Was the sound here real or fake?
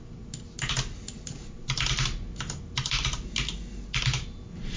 real